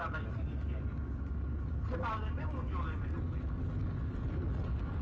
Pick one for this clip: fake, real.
fake